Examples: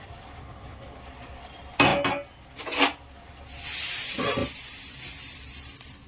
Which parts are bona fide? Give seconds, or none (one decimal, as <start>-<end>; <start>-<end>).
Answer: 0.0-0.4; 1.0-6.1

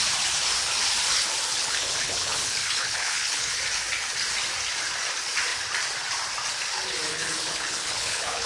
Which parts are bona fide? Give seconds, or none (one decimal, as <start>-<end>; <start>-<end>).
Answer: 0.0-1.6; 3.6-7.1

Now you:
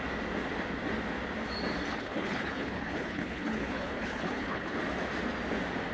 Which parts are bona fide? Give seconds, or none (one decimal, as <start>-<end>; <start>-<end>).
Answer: 0.0-1.9; 4.8-5.9

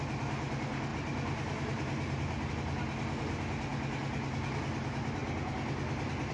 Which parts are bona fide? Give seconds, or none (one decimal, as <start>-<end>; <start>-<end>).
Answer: 0.0-6.3